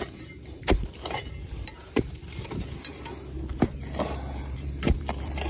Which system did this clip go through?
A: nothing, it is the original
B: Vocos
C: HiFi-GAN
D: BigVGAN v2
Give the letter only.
D